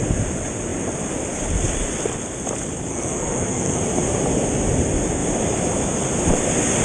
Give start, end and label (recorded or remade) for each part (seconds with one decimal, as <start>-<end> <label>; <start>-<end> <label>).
0.0-2.9 recorded; 2.9-3.8 remade; 3.8-6.8 recorded

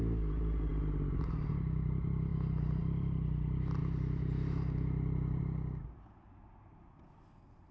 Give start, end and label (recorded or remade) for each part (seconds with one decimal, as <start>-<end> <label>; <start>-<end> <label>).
0.0-7.7 recorded

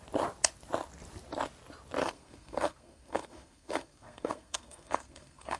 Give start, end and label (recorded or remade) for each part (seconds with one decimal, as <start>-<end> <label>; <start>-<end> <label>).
0.0-2.0 recorded; 2.0-5.6 remade

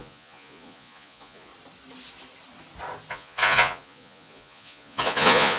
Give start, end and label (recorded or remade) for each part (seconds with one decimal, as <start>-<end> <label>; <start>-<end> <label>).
0.0-1.5 remade; 1.5-3.1 recorded; 3.1-5.6 remade

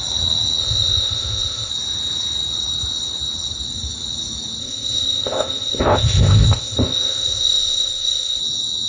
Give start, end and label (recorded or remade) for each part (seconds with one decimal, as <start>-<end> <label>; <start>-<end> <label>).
0.0-0.6 recorded; 0.6-1.7 remade; 1.7-4.6 recorded; 4.6-8.4 remade; 8.4-8.9 recorded